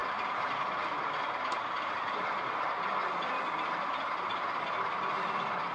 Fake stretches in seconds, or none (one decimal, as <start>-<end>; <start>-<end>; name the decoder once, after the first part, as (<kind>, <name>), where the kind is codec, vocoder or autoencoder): 0.0-2.3 (vocoder, BigVGAN v2)